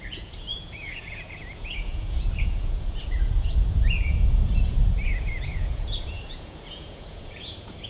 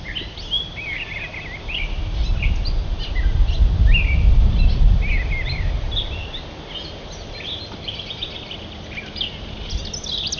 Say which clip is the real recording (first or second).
second